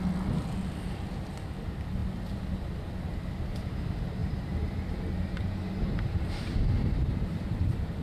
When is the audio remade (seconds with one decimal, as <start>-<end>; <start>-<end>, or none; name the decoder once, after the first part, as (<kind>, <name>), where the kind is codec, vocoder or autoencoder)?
4.2-8.0 (vocoder, BigVGAN v2)